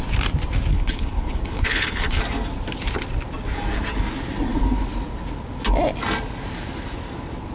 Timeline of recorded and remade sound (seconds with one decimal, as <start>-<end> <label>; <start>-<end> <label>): 0.0-0.7 recorded; 0.7-2.2 remade; 2.2-7.5 recorded